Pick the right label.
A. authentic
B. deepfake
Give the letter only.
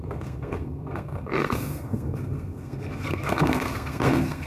B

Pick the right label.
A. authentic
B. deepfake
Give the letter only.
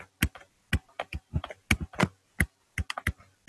A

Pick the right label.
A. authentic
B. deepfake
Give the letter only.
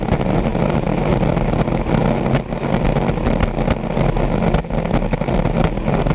A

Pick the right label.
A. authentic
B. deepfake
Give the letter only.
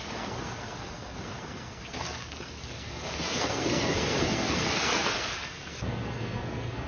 B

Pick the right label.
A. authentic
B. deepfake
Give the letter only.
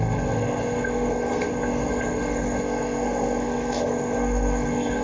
B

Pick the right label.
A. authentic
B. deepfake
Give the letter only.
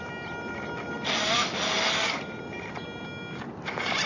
A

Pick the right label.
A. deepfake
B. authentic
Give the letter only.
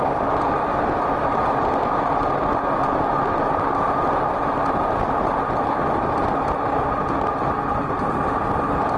B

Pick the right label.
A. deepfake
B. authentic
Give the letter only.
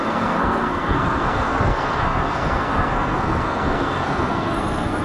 A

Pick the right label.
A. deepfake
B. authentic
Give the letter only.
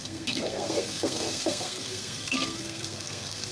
A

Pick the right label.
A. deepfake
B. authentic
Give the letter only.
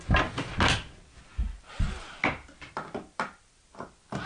B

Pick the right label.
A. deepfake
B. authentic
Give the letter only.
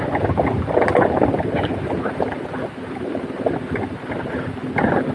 B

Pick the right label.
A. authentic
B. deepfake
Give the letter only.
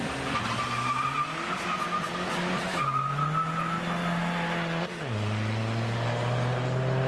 A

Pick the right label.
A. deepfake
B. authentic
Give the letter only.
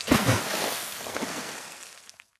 A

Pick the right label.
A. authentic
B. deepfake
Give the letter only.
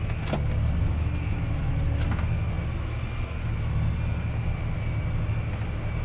A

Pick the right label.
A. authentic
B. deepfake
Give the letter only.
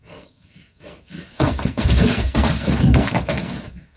B